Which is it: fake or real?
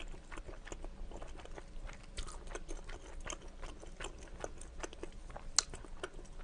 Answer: real